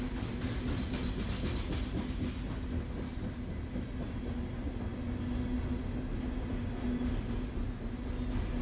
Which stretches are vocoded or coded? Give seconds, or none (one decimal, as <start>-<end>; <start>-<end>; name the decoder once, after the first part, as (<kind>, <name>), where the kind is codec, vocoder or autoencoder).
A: none